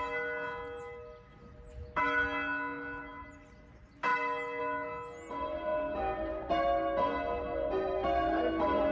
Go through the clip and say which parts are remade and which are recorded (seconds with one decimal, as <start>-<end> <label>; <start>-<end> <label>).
0.0-8.9 recorded